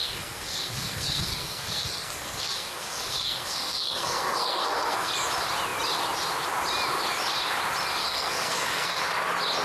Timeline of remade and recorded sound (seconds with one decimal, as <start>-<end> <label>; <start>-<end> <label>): 0.0-5.1 remade; 5.1-8.0 recorded; 8.0-9.0 remade; 9.0-9.6 recorded